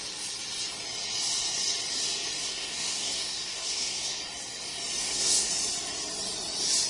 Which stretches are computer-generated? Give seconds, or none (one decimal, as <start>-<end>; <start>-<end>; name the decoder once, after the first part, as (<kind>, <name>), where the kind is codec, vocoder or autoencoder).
2.4-4.2 (codec, SNAC); 5.0-5.5